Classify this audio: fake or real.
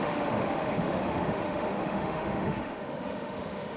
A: fake